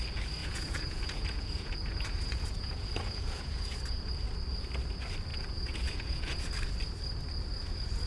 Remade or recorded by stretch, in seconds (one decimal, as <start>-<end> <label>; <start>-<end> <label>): 0.0-0.4 recorded; 0.4-4.1 remade; 4.1-5.3 recorded; 5.3-6.5 remade; 6.5-8.1 recorded

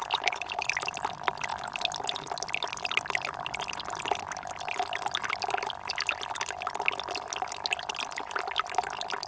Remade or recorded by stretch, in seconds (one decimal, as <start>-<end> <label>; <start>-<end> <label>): 0.0-9.3 recorded